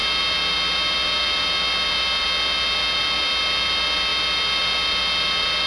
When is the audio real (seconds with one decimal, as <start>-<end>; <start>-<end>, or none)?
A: 0.0-5.7